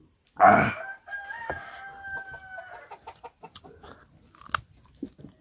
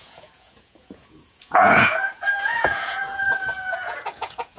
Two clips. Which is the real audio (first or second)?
first